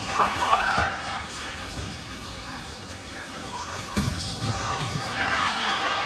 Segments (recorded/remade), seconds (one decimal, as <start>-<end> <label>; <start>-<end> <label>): 0.0-6.1 remade